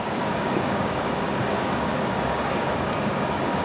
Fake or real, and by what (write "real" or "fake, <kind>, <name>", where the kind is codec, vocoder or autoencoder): fake, codec, DAC